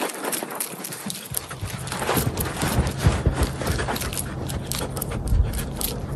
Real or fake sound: real